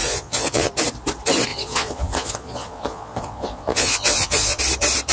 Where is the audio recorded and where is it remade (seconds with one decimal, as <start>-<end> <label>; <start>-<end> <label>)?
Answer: 0.0-0.7 remade; 0.7-1.5 recorded; 1.5-4.6 remade; 4.6-5.1 recorded